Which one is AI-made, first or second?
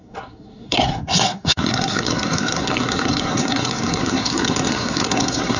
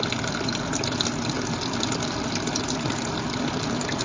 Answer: first